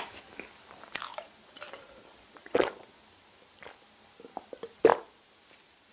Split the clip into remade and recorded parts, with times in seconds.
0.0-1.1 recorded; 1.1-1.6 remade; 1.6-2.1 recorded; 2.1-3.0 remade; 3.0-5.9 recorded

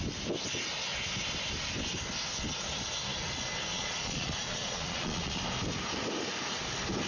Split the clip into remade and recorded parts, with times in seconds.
0.0-3.7 recorded; 3.7-5.4 remade; 5.4-7.1 recorded